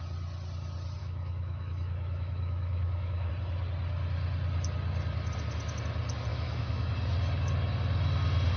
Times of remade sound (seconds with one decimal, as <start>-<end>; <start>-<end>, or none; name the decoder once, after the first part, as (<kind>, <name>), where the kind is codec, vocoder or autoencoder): 1.0-3.3 (autoencoder, DAC-VAE); 6.3-6.9